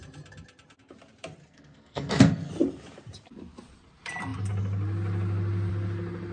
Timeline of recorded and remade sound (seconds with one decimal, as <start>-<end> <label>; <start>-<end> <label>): 0.0-1.4 recorded; 1.4-2.5 remade; 2.5-6.3 recorded